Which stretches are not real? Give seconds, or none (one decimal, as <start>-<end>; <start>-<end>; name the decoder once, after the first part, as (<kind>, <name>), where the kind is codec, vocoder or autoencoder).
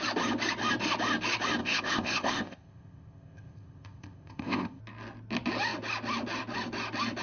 1.6-4.8 (codec, ZipCodec)